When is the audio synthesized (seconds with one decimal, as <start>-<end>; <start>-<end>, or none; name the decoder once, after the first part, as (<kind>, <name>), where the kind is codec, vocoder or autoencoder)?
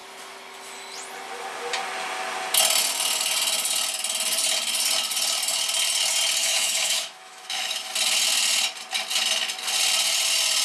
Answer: 6.4-7.9 (autoencoder, DAC-VAE)